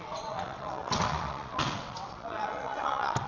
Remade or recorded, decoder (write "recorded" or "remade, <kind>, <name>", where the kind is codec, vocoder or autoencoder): remade, vocoder, WaveNeXt